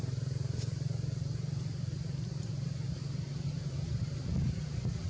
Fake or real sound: fake